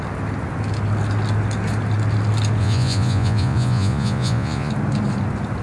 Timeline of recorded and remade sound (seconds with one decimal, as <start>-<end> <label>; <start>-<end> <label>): 0.0-2.6 recorded; 2.6-4.7 remade; 4.7-5.6 recorded